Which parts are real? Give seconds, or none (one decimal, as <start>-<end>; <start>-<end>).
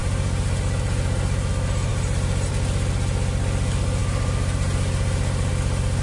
1.5-1.9; 2.5-4.0; 5.5-6.0